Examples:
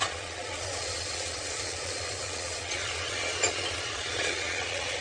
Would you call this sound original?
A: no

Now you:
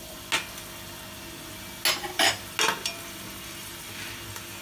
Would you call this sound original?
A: yes